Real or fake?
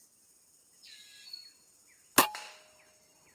real